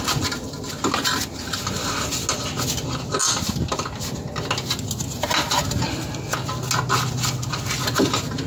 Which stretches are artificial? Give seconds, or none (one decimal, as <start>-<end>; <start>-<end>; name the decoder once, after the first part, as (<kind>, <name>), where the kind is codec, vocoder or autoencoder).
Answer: none